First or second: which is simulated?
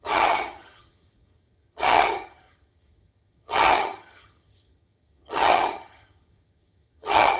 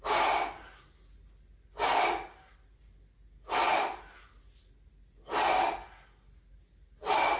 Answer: first